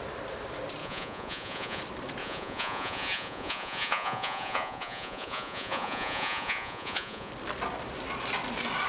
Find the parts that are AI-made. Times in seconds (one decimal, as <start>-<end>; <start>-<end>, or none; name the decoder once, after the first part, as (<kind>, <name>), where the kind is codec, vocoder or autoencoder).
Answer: 0.8-1.8 (vocoder, Vocos); 2.2-7.3